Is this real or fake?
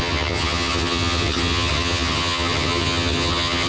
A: fake